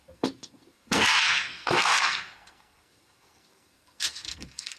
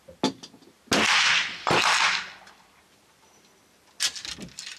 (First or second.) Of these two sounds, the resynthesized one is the first